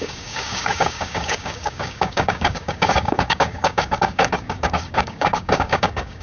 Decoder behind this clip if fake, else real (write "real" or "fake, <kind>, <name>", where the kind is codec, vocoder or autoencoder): fake, codec, DAC